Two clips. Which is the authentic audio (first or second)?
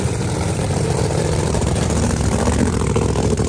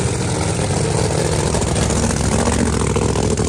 second